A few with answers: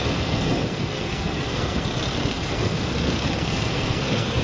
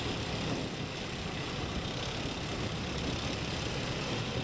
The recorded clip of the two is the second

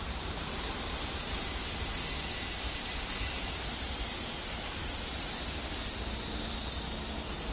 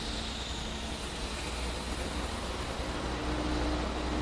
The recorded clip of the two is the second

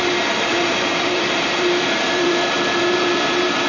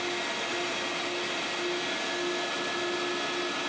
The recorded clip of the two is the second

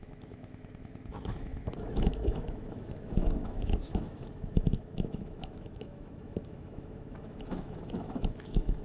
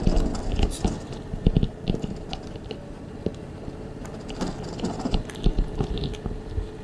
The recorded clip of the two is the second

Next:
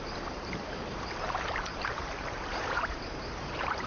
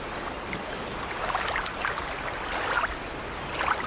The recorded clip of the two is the second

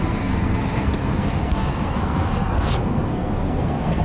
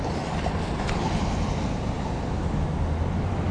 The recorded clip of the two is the second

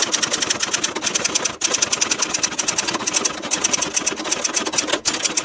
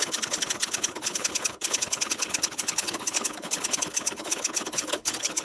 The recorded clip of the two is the first